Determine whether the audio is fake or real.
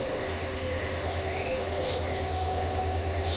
fake